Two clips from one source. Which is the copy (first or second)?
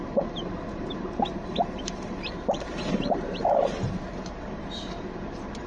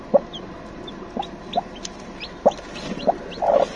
first